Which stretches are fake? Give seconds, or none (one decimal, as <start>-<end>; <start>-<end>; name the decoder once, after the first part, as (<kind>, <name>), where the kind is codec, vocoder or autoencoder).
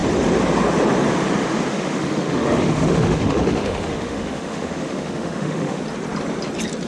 1.7-5.8 (autoencoder, DAC-VAE)